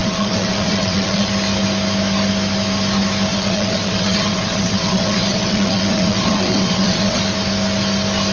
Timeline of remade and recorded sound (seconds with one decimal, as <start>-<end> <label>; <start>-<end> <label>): 0.0-1.3 remade; 1.3-3.3 recorded; 3.3-7.2 remade; 7.2-8.3 recorded